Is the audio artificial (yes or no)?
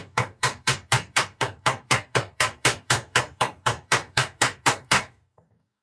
yes